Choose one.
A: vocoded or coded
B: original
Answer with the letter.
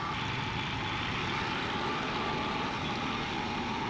B